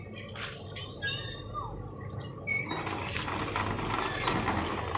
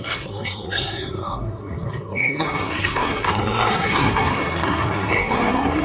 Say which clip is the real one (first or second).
first